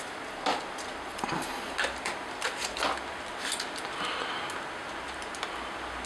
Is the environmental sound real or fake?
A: real